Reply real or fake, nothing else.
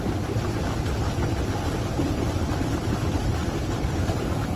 real